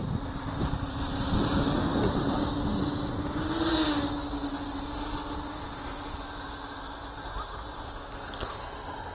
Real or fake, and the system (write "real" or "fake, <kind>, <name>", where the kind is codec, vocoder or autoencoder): real